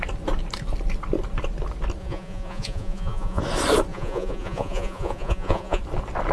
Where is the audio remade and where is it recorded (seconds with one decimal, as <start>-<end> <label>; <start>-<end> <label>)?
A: 0.0-2.0 recorded; 2.0-3.4 remade; 3.4-3.9 recorded; 3.9-5.8 remade; 5.8-6.3 recorded